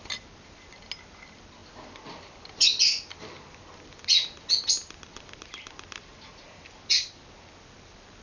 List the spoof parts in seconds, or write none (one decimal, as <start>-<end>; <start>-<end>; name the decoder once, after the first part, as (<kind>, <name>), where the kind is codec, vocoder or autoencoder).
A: none